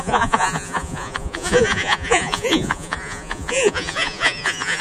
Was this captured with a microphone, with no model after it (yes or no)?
no